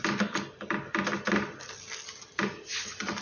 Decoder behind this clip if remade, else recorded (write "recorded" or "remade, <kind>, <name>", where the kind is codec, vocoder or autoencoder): recorded